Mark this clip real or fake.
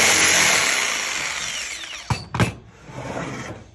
real